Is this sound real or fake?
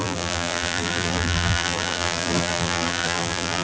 fake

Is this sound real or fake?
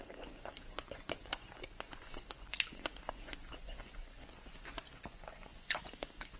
fake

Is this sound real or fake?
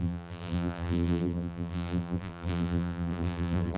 fake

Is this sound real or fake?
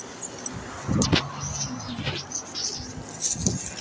real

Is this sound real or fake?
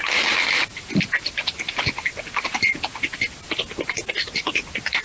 real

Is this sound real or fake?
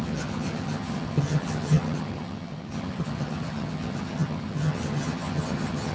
fake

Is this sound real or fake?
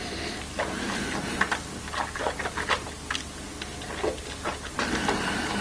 real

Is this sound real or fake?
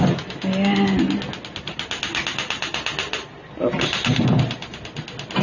real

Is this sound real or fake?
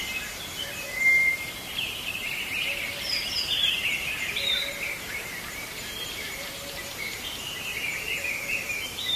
fake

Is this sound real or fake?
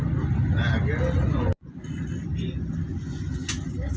real